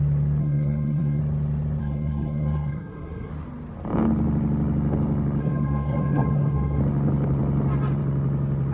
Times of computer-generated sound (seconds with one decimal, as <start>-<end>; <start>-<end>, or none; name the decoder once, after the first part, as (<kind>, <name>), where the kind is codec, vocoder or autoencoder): 0.4-1.2 (codec, SNAC); 1.8-3.3; 5.4-6.8